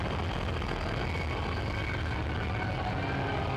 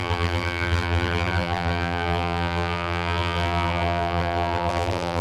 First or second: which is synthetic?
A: second